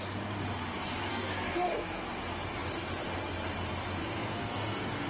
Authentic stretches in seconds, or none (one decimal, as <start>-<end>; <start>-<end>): 0.0-1.1; 2.0-4.0